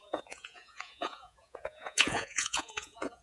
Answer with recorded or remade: remade